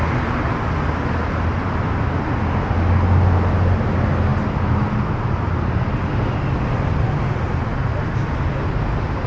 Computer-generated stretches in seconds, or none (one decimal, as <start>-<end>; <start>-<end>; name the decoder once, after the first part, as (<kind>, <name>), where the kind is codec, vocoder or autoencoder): none